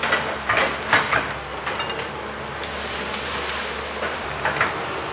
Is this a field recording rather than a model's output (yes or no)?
yes